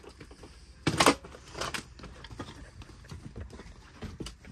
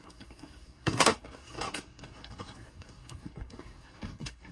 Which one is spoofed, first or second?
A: second